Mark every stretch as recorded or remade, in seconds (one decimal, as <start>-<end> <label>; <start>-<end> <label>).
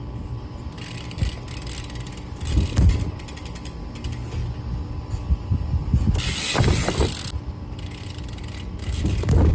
0.0-9.5 recorded